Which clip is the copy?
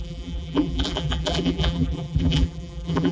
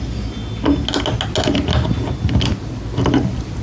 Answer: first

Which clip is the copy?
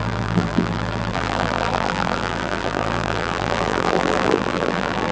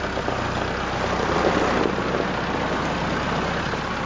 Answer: first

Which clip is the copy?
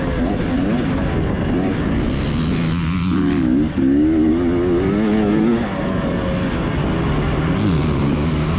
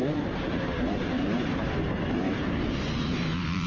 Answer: second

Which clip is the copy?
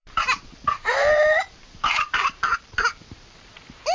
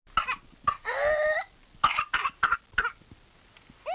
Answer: first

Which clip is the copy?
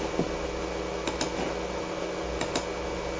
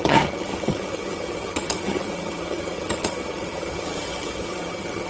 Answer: second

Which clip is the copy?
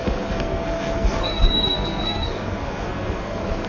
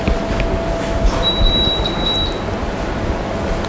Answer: first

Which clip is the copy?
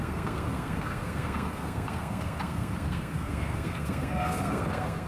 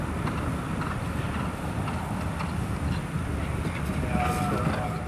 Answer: first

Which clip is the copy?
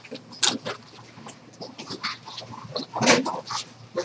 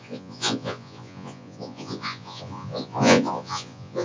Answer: second